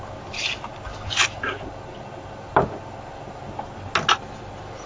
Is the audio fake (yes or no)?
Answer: no